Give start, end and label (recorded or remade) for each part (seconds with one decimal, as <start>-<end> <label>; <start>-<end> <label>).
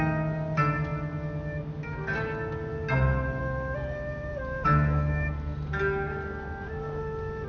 0.0-7.5 recorded